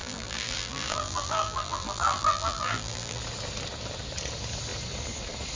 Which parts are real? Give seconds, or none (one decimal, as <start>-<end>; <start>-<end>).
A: 3.2-5.6